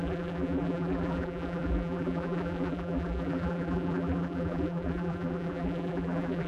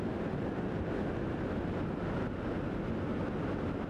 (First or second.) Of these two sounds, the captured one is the second